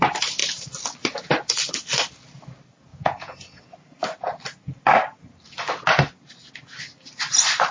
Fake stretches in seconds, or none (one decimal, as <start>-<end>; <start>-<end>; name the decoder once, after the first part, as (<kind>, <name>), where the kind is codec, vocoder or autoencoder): 2.9-3.6 (vocoder, Vocos)